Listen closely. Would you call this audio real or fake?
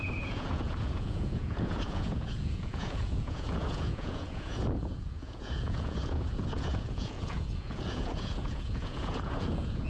fake